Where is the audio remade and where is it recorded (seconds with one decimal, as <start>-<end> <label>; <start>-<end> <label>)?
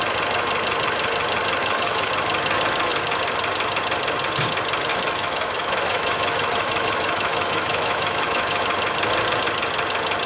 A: 0.0-1.6 recorded; 1.6-2.1 remade; 2.1-4.9 recorded; 4.9-8.6 remade; 8.6-10.3 recorded